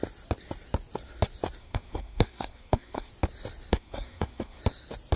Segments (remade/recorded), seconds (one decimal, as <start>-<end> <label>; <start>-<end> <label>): 0.0-1.6 recorded; 1.6-3.1 remade; 3.1-3.7 recorded; 3.7-4.6 remade; 4.6-5.2 recorded